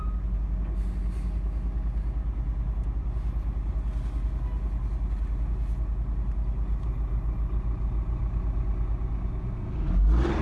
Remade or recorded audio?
recorded